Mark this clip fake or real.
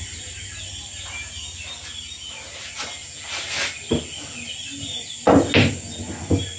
real